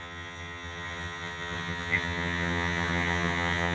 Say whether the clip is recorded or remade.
remade